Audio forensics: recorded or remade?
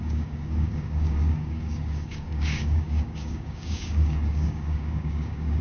remade